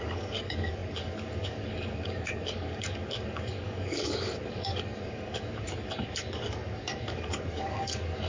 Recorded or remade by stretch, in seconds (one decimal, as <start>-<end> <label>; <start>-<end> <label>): 0.0-8.3 remade